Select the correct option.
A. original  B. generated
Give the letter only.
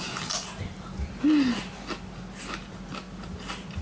A